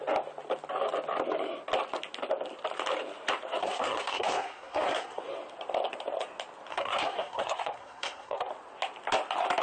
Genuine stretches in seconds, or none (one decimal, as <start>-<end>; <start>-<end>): 0.0-3.6; 5.2-6.7; 8.5-9.6